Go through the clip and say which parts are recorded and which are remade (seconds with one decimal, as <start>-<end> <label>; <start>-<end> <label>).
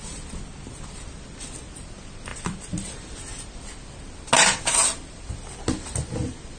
0.0-6.6 recorded